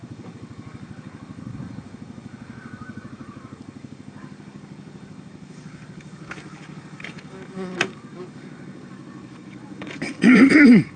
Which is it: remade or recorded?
remade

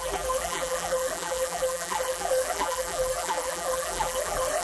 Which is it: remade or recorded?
remade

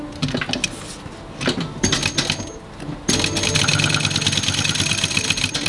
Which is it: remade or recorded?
recorded